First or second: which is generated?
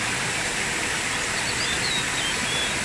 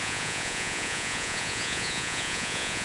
second